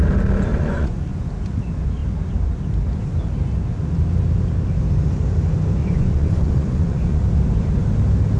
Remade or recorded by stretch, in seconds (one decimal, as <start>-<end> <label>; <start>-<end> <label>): 0.0-0.5 recorded; 0.5-1.3 remade; 1.3-5.8 recorded; 5.8-7.2 remade; 7.2-8.4 recorded

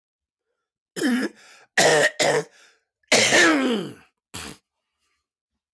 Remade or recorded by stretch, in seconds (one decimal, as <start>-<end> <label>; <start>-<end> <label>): 0.0-5.7 recorded